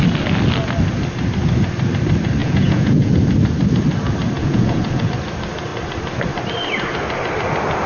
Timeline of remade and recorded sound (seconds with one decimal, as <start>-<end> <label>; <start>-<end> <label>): 0.0-2.4 recorded; 2.4-3.1 remade; 3.1-4.4 recorded; 4.4-5.1 remade; 5.1-7.9 recorded